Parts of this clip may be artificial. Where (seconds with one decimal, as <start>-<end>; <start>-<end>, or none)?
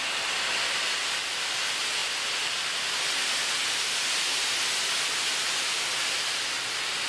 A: none